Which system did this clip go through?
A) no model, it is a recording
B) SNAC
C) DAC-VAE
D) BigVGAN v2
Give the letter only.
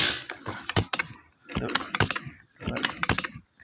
A